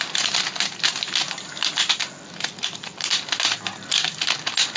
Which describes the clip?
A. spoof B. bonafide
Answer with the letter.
B